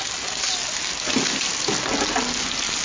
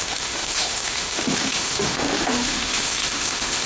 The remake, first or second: second